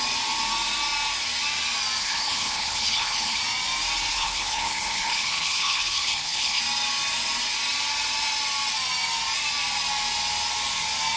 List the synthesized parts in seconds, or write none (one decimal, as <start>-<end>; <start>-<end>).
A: 2.0-3.4; 4.1-6.6